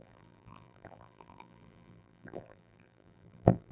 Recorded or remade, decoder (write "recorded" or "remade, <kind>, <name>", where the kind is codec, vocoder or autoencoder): remade, vocoder, BigVGAN v2